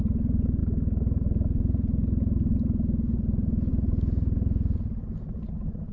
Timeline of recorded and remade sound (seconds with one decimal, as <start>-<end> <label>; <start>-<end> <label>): 0.0-5.9 recorded